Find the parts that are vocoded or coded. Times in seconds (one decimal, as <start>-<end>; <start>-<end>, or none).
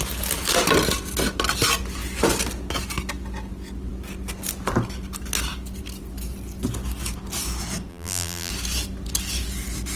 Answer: 7.9-8.5